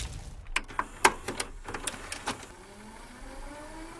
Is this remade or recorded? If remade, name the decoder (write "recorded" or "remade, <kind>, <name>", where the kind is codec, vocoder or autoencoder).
recorded